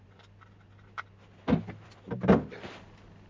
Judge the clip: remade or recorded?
recorded